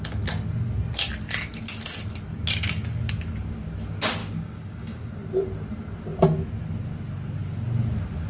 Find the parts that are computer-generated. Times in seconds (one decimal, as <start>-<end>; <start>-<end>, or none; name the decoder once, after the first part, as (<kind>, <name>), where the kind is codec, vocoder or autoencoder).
4.2-5.1 (codec, DAC)